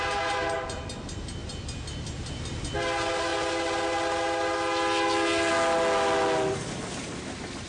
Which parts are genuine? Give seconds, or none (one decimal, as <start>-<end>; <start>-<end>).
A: 0.0-7.7